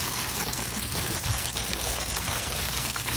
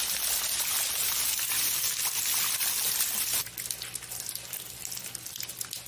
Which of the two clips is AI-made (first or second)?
first